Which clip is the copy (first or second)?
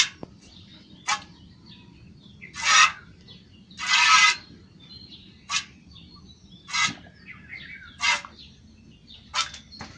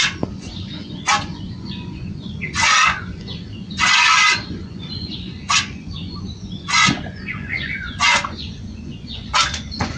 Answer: second